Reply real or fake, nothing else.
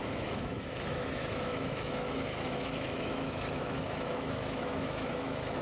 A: fake